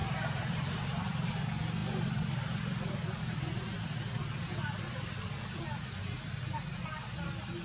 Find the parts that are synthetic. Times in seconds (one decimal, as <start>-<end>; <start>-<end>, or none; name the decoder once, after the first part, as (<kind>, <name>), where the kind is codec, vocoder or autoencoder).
0.0-1.3 (vocoder, BigVGAN v2)